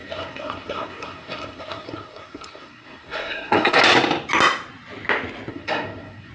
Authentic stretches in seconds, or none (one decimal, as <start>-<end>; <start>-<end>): 3.8-5.5